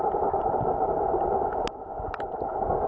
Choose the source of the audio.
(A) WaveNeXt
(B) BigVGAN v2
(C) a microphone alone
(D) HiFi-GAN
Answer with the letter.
C